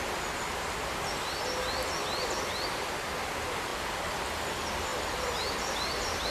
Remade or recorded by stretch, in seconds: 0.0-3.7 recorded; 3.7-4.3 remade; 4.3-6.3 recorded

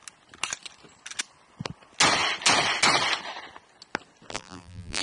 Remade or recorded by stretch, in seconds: 0.0-4.3 recorded; 4.3-5.0 remade

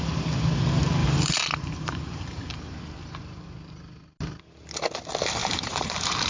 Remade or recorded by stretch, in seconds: 0.0-1.0 recorded; 1.0-2.6 remade; 2.6-5.4 recorded; 5.4-6.3 remade

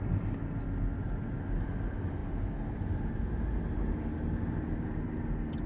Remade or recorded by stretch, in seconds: 0.0-5.7 recorded